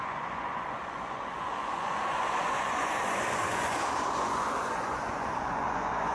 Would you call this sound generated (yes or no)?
yes